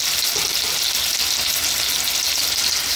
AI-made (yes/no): no